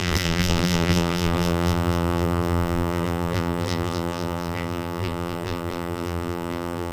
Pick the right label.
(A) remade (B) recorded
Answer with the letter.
A